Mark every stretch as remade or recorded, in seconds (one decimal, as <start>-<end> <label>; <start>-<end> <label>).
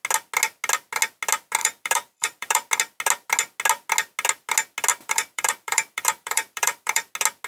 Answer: 0.0-1.6 recorded; 1.6-2.7 remade; 2.7-4.9 recorded; 4.9-7.1 remade; 7.1-7.5 recorded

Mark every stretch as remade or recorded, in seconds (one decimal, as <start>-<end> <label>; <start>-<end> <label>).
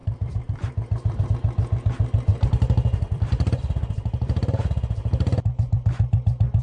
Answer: 0.0-1.3 remade; 1.3-2.3 recorded; 2.3-5.4 remade; 5.4-6.6 recorded